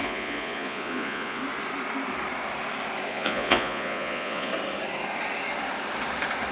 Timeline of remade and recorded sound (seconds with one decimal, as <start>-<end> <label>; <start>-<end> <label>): 0.0-1.4 remade; 1.4-3.1 recorded; 3.1-4.5 remade; 4.5-6.5 recorded